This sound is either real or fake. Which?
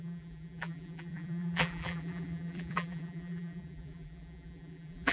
fake